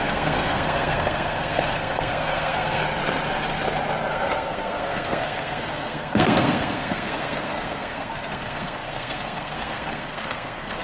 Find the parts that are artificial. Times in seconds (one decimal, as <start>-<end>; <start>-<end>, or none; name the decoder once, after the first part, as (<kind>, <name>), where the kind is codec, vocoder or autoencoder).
0.0-2.8 (codec, SNAC); 4.1-10.8